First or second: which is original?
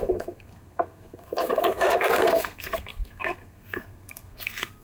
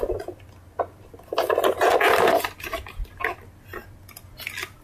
second